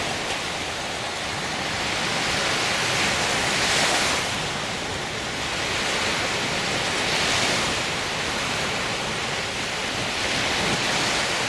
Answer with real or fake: real